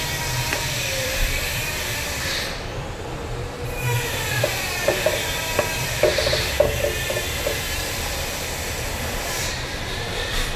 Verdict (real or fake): fake